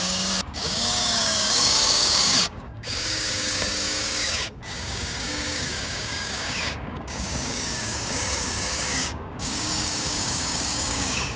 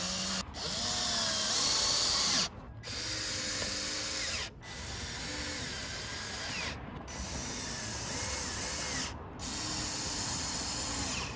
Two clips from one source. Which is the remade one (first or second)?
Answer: first